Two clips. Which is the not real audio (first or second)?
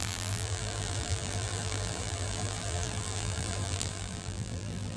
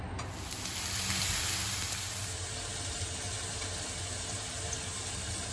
first